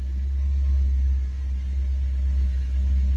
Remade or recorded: recorded